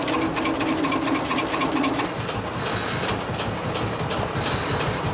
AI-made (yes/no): no